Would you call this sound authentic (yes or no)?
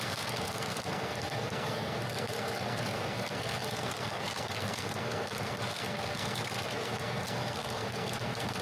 no